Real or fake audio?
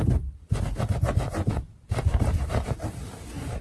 fake